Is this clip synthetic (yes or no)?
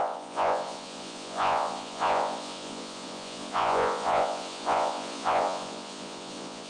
yes